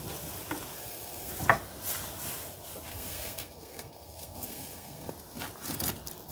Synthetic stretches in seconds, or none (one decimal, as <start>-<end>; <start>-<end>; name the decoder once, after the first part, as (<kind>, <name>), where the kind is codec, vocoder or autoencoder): 0.8-1.3 (codec, SNAC); 2.9-5.1